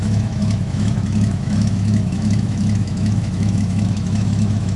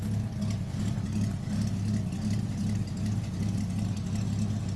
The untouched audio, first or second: second